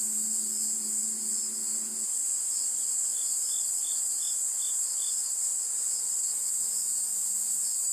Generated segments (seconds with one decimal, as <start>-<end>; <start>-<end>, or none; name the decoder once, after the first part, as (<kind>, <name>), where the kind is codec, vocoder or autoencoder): none

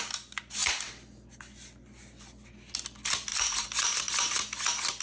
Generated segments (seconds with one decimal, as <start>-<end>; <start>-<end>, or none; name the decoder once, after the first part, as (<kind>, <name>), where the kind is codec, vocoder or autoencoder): 3.3-4.0 (vocoder, BigVGAN v2)